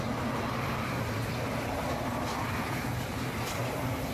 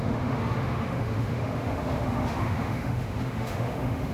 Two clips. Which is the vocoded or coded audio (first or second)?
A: second